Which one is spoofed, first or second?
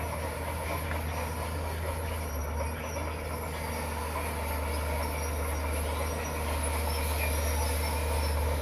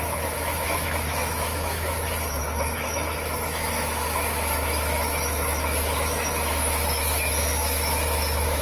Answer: second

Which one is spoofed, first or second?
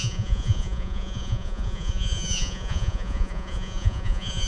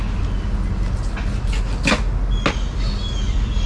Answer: first